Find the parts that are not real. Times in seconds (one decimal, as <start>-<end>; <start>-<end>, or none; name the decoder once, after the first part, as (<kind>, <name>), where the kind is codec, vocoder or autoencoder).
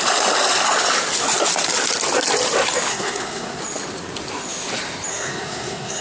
2.9-3.6 (codec, SNAC); 5.1-6.0